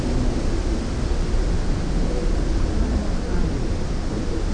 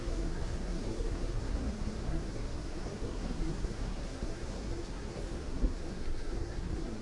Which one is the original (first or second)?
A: first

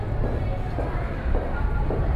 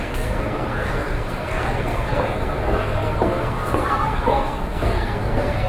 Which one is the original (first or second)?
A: first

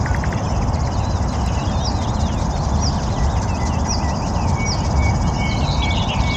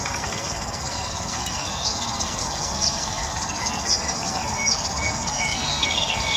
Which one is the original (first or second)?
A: first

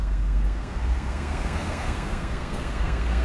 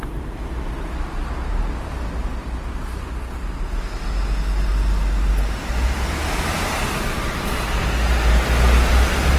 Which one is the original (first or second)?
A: second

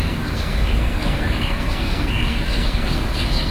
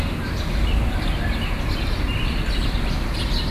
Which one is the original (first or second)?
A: second